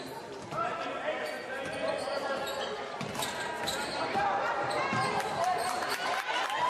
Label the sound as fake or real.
real